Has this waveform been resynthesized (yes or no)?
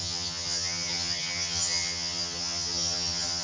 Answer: yes